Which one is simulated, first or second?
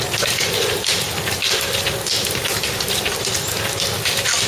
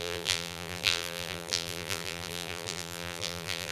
second